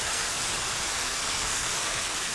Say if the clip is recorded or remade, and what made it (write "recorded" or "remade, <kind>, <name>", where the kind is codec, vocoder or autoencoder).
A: remade, codec, SNAC